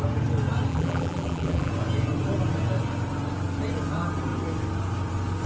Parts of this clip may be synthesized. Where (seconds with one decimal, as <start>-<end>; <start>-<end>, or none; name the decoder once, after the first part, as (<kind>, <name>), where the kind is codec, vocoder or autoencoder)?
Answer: 0.7-1.7 (vocoder, BigVGAN v2)